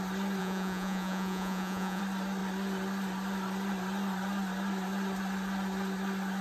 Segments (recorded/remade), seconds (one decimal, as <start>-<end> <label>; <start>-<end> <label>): 0.0-0.4 recorded; 0.4-2.0 remade; 2.0-6.4 recorded